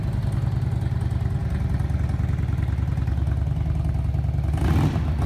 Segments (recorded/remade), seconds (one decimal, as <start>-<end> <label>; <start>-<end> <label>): 0.0-5.3 recorded